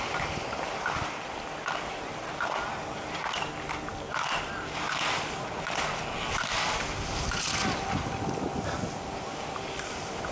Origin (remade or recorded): recorded